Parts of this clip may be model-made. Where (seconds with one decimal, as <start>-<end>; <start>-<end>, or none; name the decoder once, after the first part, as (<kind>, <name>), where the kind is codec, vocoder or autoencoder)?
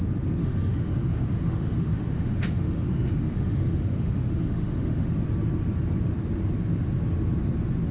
0.4-5.1 (autoencoder, DAC-VAE)